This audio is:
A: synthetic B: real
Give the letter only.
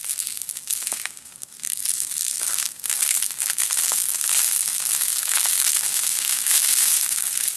A